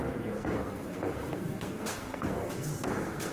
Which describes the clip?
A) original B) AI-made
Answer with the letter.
B